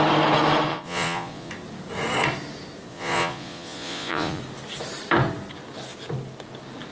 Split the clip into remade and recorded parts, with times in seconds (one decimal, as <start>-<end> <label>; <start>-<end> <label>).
0.0-0.7 recorded; 0.7-1.5 remade; 1.5-2.9 recorded; 2.9-4.4 remade; 4.4-6.9 recorded